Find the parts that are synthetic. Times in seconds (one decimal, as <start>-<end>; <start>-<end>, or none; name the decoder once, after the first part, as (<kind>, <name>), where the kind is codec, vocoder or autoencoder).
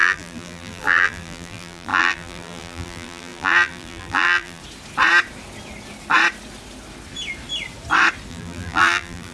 0.0-4.6 (vocoder, BigVGAN v2); 8.3-9.3